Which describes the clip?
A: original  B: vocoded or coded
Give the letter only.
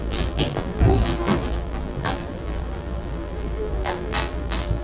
B